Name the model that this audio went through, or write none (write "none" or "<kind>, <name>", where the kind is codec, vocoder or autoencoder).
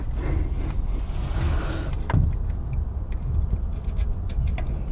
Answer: none